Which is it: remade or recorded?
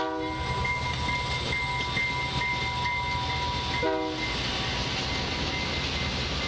recorded